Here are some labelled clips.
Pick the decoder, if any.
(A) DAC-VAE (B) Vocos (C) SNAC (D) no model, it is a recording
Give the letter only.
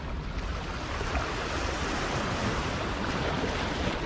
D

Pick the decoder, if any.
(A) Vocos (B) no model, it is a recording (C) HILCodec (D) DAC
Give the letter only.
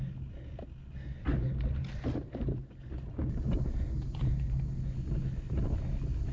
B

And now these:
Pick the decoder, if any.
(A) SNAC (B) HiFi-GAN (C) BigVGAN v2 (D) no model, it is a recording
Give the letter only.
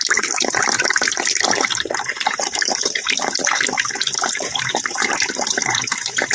C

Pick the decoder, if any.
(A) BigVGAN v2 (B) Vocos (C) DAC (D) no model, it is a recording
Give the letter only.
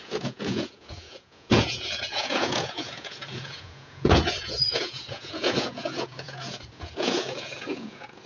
B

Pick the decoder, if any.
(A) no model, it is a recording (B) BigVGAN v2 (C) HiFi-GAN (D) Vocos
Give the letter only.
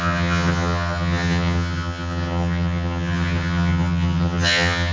C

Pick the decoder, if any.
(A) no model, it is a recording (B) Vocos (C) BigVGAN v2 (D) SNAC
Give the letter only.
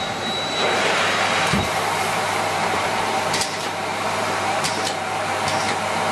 C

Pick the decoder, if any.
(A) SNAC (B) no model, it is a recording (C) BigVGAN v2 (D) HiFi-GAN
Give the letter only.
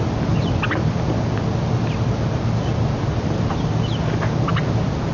B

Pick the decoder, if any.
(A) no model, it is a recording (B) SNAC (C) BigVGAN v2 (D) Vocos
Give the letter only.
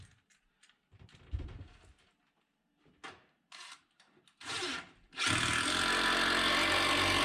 A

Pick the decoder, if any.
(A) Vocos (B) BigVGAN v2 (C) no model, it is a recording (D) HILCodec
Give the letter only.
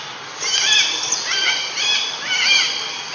C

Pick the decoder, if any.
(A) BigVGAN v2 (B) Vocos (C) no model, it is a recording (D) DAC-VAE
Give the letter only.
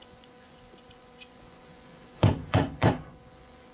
B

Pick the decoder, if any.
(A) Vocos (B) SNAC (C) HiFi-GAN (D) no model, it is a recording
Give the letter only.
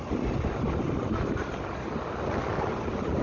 D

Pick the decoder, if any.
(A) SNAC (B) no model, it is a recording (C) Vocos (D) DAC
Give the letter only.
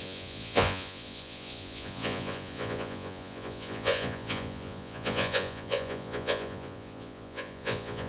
C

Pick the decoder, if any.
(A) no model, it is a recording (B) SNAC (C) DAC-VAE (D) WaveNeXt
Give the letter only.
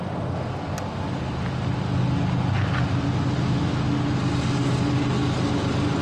A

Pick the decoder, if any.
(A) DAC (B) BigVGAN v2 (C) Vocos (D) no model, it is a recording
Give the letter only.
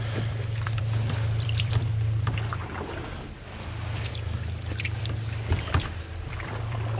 B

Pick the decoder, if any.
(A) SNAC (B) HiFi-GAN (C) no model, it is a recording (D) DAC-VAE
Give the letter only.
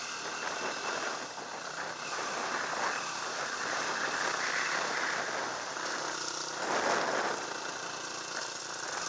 C